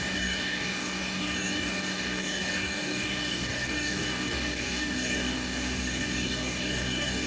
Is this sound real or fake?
fake